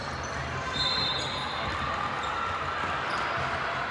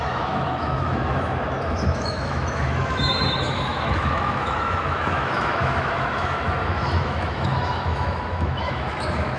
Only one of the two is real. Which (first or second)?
first